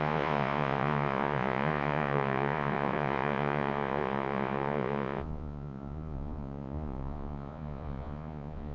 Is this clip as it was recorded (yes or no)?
no